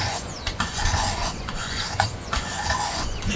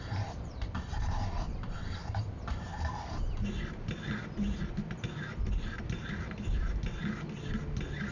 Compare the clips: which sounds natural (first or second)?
second